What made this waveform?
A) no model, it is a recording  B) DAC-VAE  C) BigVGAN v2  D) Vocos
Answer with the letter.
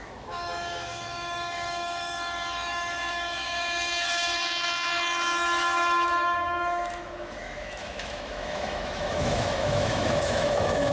B